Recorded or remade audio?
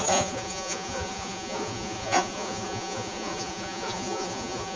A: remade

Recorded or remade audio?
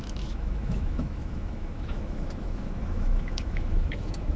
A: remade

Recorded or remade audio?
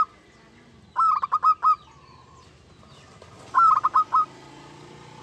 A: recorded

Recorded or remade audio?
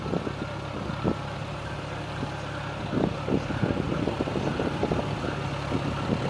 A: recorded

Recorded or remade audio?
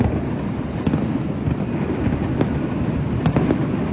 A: recorded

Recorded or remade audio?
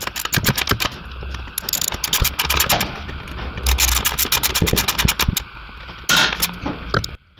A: recorded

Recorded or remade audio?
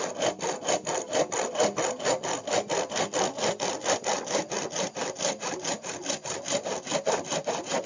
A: recorded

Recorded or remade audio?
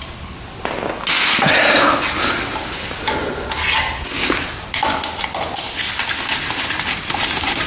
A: recorded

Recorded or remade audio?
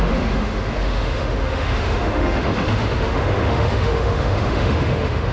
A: remade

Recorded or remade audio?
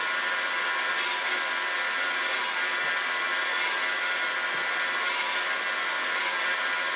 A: recorded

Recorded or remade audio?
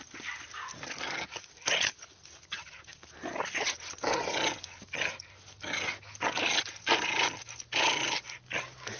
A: recorded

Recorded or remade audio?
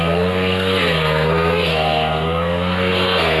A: remade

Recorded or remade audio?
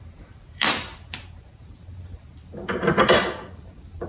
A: remade